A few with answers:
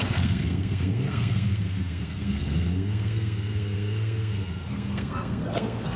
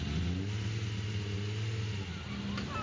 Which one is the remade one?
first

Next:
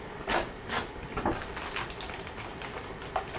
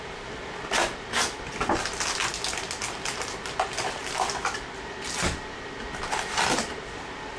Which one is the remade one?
first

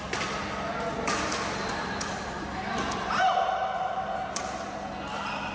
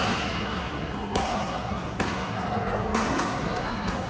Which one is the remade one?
second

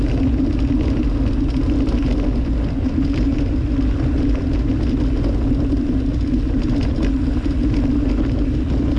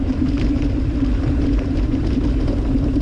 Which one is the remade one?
second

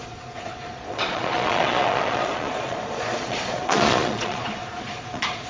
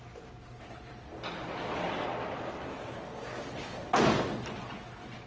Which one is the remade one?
first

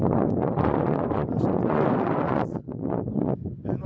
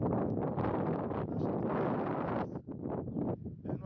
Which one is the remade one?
first